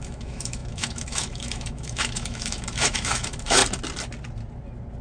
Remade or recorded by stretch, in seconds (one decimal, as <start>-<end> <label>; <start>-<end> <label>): 0.0-3.6 remade; 3.6-5.0 recorded